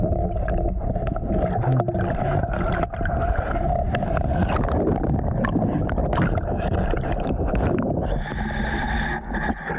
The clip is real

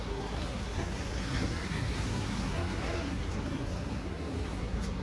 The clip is fake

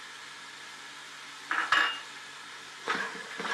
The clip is real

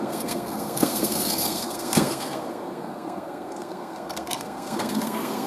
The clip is fake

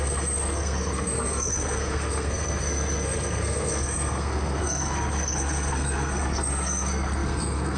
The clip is fake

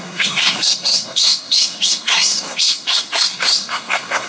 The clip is fake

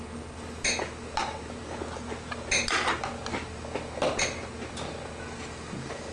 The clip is real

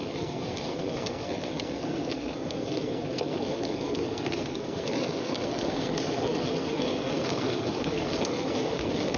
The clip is fake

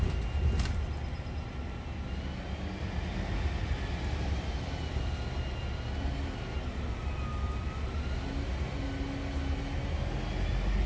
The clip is real